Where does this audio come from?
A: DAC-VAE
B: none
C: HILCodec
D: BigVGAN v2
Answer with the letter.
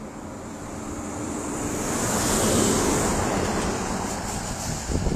D